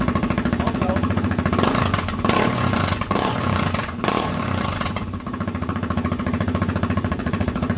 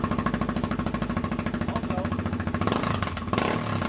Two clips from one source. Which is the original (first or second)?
second